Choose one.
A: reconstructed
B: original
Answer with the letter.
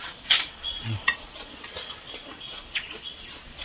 A